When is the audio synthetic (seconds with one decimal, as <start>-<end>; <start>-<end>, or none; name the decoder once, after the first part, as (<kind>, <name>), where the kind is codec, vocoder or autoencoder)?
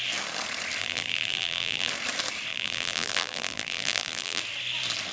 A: 0.8-1.9 (vocoder, BigVGAN v2); 2.5-4.4